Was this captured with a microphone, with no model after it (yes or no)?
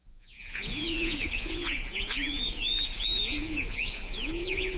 no